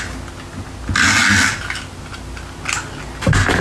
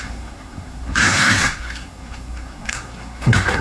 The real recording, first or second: first